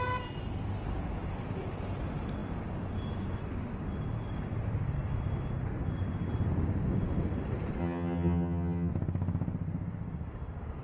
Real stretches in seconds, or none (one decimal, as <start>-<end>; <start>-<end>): 0.0-7.8; 8.9-10.8